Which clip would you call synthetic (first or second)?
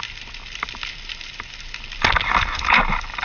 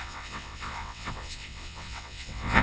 second